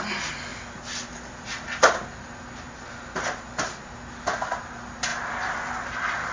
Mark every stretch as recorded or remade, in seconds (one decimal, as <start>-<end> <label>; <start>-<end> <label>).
0.0-6.3 recorded